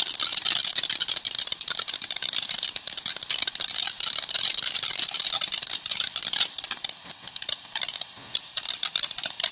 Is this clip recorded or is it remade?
recorded